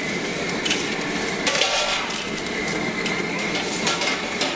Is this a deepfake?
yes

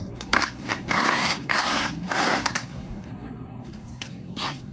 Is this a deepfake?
yes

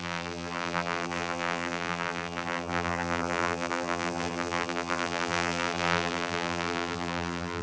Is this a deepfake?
yes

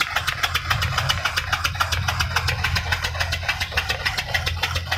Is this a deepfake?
no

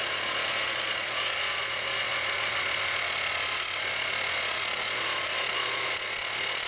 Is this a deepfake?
yes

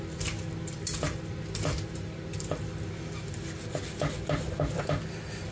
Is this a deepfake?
no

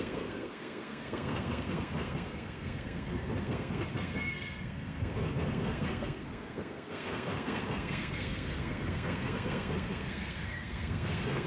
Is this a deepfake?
yes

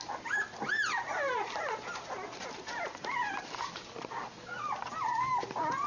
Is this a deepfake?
no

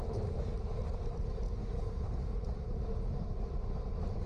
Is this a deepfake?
no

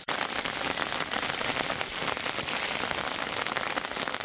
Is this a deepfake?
no